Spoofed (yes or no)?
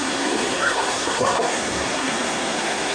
yes